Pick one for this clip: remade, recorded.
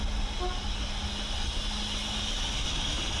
recorded